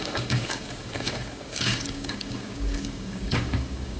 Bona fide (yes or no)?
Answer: no